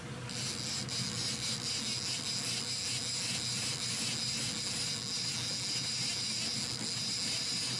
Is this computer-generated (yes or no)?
no